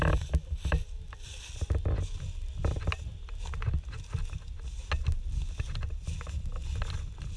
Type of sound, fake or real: real